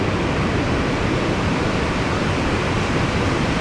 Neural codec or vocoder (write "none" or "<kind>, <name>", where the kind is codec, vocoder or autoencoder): none